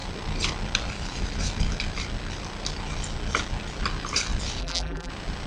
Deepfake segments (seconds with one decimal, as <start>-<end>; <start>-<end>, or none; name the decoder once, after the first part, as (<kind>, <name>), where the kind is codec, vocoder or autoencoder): 4.6-5.1 (vocoder, BigVGAN v2)